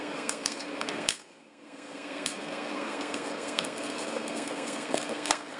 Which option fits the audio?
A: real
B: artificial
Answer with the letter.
B